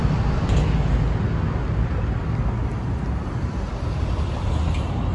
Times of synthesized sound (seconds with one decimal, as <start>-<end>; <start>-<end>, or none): none

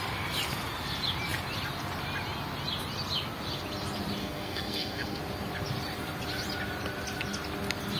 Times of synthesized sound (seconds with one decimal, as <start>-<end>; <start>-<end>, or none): 4.2-5.2

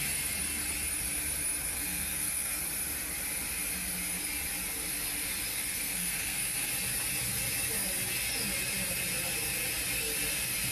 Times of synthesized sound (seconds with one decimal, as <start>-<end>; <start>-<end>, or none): 1.7-2.6; 5.5-6.7

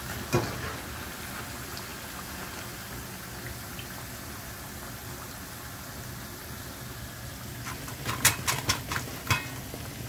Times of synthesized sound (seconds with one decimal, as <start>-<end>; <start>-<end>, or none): none

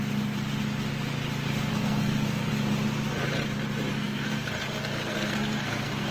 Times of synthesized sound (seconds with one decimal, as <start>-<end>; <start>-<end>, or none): 1.7-2.5; 3.9-6.1

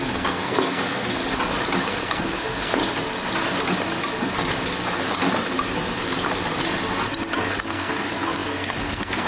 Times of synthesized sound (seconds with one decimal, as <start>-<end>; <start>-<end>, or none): 0.0-1.2; 1.8-2.8; 7.5-9.3

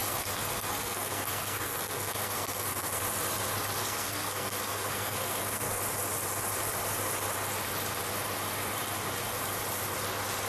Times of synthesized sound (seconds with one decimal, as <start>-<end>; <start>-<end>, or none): 0.0-3.0; 3.8-5.8

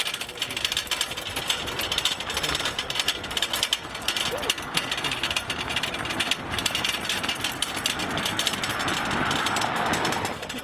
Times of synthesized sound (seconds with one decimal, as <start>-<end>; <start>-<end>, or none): none